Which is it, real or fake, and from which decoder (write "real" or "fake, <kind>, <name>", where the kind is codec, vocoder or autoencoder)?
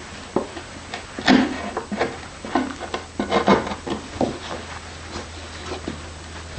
real